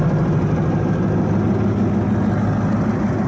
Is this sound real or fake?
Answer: real